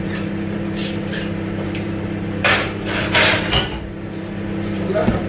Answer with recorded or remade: remade